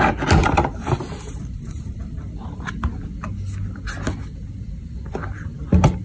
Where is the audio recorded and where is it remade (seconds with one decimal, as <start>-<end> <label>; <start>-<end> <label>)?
0.0-0.4 recorded; 0.4-2.7 remade; 2.7-6.0 recorded